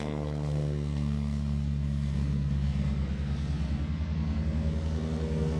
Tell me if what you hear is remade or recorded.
remade